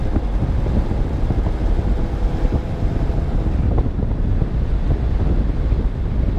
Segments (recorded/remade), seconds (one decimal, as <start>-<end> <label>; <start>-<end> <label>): 0.0-1.6 recorded; 1.6-3.1 remade; 3.1-6.4 recorded

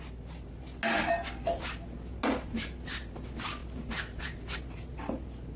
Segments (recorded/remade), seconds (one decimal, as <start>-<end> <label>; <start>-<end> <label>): 0.0-5.6 recorded

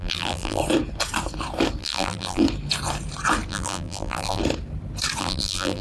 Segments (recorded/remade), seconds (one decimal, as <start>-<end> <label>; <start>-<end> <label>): 0.0-0.6 remade; 0.6-1.8 recorded; 1.8-2.4 remade; 2.4-3.5 recorded; 3.5-4.4 remade; 4.4-5.2 recorded; 5.2-5.8 remade

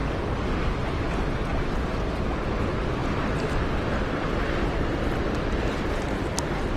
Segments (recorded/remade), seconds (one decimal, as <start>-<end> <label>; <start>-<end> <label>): 0.0-2.3 recorded; 2.3-6.8 remade

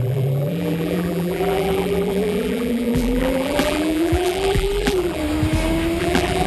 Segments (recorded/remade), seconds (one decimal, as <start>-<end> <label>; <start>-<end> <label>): 0.0-5.2 remade; 5.2-6.0 recorded; 6.0-6.5 remade